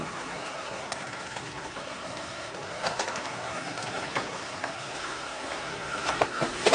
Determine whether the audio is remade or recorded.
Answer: remade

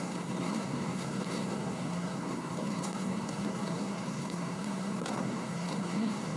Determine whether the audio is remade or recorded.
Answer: remade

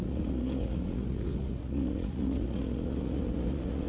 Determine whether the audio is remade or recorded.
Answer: remade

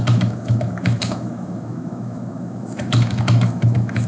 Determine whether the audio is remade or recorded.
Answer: remade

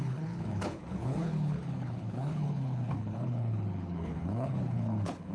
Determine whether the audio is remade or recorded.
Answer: remade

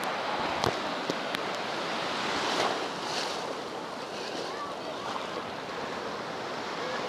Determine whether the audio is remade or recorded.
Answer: recorded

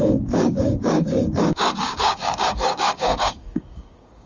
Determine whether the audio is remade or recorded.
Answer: remade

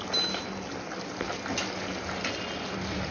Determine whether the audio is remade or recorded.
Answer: recorded